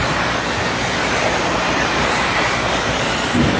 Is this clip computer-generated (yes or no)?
no